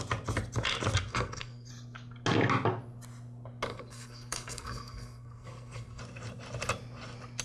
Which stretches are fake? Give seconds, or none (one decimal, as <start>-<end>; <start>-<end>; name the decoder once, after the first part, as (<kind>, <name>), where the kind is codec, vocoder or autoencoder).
1.1-1.7 (codec, SNAC); 3.7-6.0